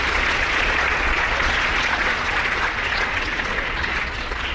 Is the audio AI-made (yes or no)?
yes